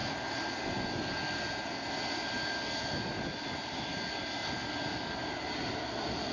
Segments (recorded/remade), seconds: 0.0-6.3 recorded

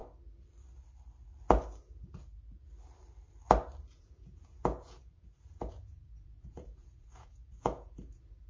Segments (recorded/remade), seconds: 0.0-3.9 recorded; 3.9-8.5 remade

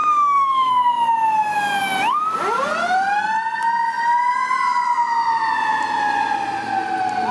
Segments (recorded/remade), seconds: 0.0-0.7 remade; 0.7-7.3 recorded

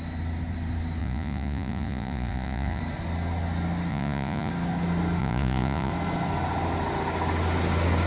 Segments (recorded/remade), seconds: 0.0-1.0 recorded; 1.0-2.8 remade; 2.8-3.9 recorded; 3.9-4.5 remade; 4.5-5.2 recorded; 5.2-5.9 remade; 5.9-8.1 recorded

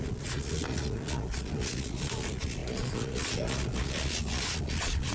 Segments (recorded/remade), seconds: 0.0-5.1 remade

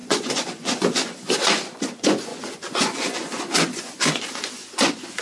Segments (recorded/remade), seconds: 0.0-5.2 remade

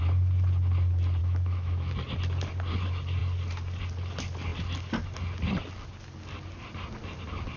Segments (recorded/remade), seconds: 0.0-1.2 recorded; 1.2-1.9 remade; 1.9-7.6 recorded

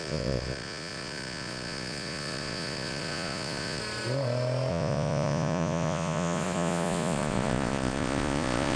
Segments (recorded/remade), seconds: 0.0-3.8 remade; 3.8-4.7 recorded; 4.7-8.8 remade